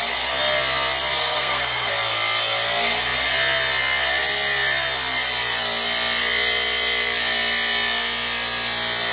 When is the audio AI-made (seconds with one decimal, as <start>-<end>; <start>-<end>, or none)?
1.2-1.9